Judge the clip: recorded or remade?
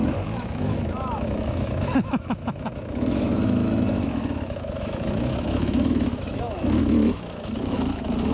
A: remade